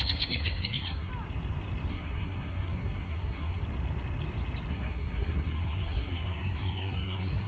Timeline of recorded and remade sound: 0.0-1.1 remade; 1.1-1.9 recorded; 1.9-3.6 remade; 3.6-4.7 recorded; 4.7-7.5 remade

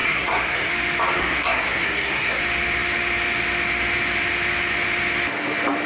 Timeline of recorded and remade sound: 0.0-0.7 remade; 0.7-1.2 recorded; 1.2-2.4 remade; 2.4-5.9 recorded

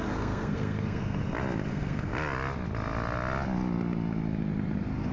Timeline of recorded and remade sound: 0.0-1.2 remade; 1.2-1.7 recorded; 1.7-2.1 remade; 2.1-5.1 recorded

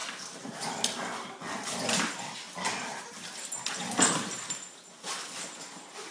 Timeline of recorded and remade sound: 0.0-6.1 recorded

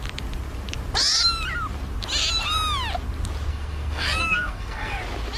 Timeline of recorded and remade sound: 0.0-3.5 recorded; 3.5-5.0 remade; 5.0-5.4 recorded

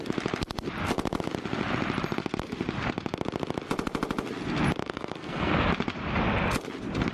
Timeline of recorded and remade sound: 0.0-4.8 recorded; 4.8-5.5 remade; 5.5-7.1 recorded

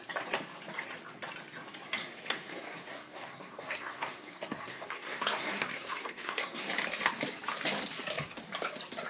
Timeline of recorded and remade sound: 0.0-2.0 recorded; 2.0-6.7 remade; 6.7-9.1 recorded